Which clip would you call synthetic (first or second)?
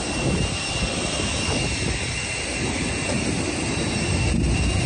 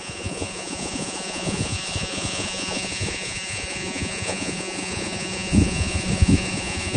second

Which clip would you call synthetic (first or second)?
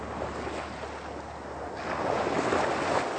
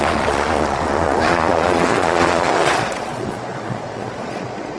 second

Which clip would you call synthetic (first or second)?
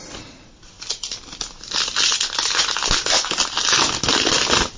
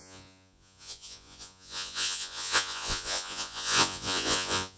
second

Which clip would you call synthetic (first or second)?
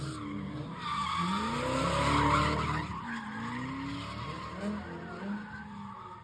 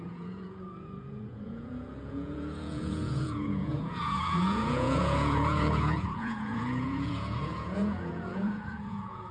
second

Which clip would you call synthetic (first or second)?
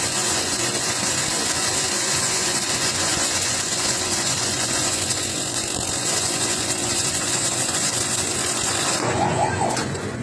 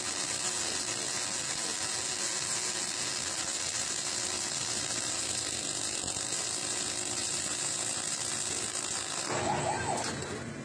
first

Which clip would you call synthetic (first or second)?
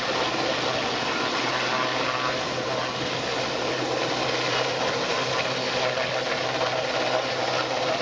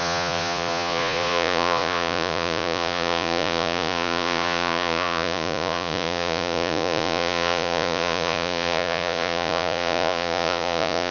second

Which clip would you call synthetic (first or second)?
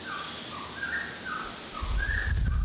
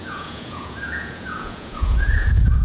second